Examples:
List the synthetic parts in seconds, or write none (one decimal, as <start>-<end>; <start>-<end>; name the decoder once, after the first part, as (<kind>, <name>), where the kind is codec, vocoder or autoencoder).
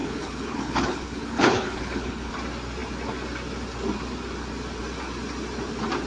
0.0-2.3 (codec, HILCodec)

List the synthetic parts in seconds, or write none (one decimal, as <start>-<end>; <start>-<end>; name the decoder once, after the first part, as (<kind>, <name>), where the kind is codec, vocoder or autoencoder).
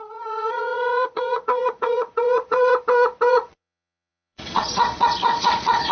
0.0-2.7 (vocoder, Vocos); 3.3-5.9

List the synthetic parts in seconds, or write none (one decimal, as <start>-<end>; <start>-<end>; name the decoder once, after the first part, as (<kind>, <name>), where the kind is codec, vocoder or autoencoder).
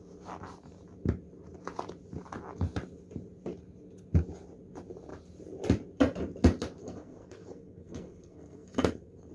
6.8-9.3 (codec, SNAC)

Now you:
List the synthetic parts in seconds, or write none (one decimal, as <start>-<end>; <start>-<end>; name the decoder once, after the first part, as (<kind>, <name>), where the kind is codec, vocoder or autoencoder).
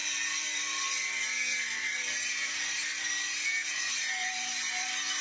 0.0-5.2 (vocoder, BigVGAN v2)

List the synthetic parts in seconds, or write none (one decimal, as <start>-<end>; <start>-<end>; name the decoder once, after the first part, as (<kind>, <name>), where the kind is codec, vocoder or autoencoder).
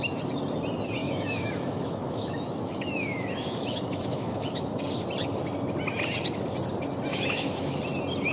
1.0-4.8 (autoencoder, DAC-VAE); 7.1-7.8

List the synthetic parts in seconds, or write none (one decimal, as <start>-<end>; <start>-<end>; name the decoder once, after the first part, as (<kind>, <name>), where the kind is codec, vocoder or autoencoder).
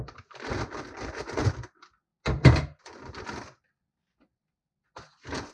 none